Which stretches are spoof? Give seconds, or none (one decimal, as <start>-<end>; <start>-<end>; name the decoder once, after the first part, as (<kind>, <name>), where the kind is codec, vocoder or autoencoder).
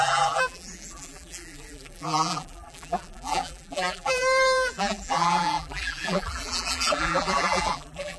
0.0-8.2 (vocoder, BigVGAN v2)